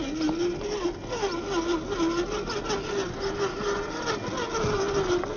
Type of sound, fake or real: real